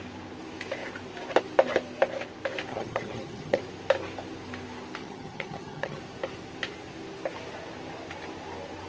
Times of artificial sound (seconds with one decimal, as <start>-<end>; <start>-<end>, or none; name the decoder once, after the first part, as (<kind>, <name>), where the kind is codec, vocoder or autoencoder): 2.7-3.6 (vocoder, HiFi-GAN); 5.0-6.0

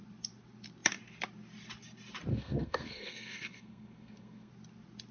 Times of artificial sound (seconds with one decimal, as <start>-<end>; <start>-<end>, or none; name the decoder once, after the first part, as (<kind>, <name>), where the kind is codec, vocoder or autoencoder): 2.3-4.5 (codec, SNAC)

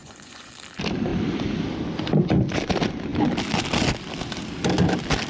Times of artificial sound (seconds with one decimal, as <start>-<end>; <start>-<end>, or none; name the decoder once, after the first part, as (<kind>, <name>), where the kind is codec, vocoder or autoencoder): 0.0-0.5 (vocoder, Vocos)

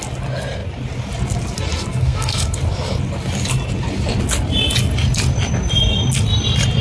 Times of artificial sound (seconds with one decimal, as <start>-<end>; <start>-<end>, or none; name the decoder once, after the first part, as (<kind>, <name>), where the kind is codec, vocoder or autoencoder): 1.9-2.6 (codec, SNAC)

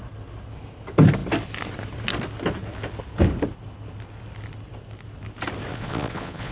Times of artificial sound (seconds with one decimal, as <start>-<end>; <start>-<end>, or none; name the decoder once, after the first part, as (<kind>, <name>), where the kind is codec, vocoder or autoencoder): 5.7-6.5 (vocoder, Vocos)

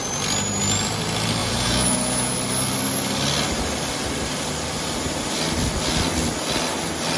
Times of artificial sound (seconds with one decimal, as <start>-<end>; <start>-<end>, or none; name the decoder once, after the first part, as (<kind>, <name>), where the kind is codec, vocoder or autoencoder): 1.4-2.3 (vocoder, Vocos)